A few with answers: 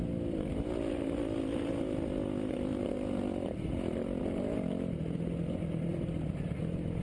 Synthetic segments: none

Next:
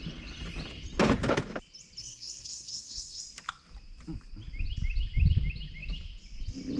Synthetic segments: 2.0-3.2 (codec, SNAC)

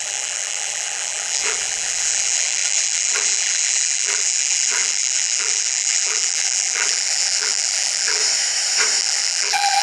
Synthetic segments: 0.0-8.2 (vocoder, BigVGAN v2); 9.0-9.8